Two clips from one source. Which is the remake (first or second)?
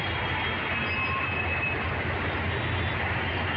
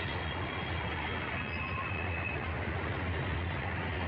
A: second